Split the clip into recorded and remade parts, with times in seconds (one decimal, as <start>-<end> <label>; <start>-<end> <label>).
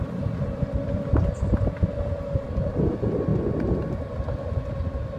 0.0-3.3 remade; 3.3-4.5 recorded; 4.5-5.2 remade